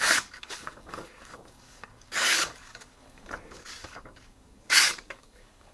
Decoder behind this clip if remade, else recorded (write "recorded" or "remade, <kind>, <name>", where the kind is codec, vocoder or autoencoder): remade, codec, DAC